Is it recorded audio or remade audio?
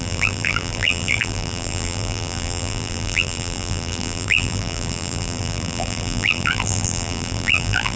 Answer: remade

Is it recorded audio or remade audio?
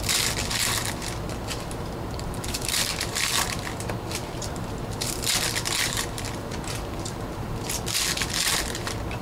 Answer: remade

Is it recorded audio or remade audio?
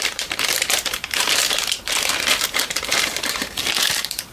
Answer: remade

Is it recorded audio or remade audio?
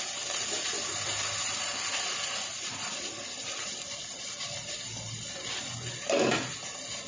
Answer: recorded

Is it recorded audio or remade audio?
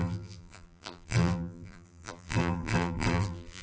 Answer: remade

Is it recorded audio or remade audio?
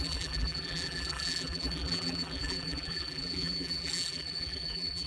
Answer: remade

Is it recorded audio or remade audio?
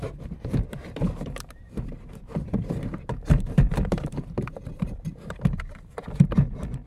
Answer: remade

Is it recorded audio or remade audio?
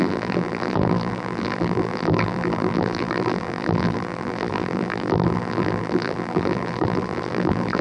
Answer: remade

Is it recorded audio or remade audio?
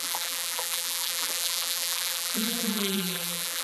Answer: remade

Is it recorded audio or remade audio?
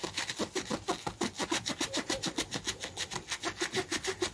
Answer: recorded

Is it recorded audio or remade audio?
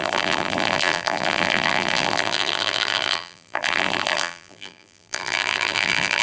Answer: remade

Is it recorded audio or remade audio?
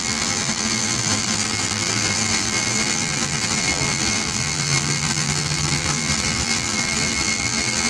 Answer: remade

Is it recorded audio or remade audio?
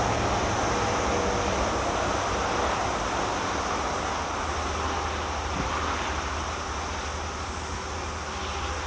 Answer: recorded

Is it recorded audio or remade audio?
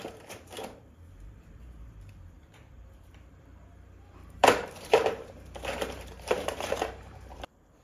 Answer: remade